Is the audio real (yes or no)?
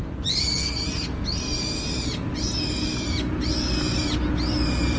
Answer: yes